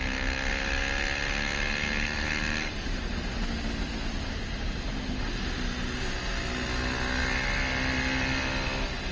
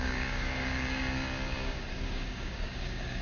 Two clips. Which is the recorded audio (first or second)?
first